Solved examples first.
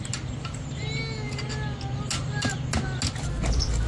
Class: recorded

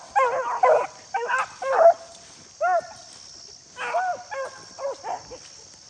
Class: recorded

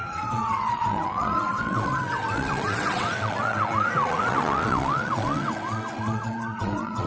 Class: remade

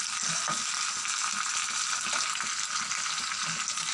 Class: recorded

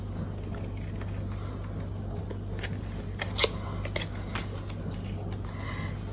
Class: recorded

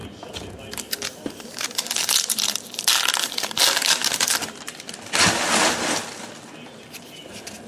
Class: recorded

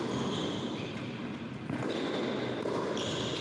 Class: recorded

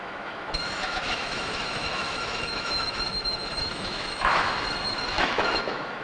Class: remade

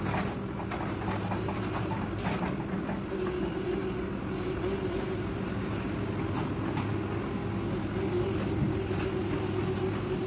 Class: recorded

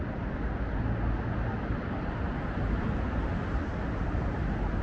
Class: recorded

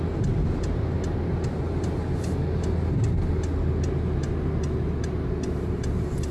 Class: recorded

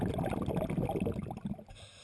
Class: recorded